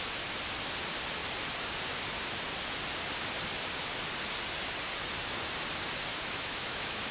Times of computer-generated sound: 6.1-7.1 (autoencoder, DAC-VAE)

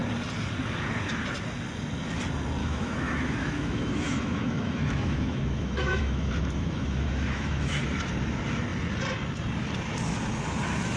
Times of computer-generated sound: 2.6-7.8 (autoencoder, DAC-VAE)